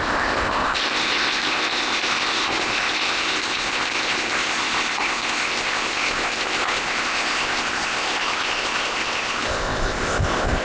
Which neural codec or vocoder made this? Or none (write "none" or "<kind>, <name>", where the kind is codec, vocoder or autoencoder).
codec, ZipCodec